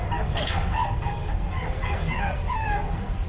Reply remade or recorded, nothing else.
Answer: remade